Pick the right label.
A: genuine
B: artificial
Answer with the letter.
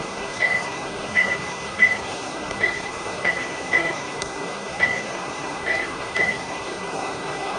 B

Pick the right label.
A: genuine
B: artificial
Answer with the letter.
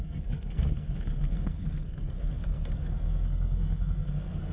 B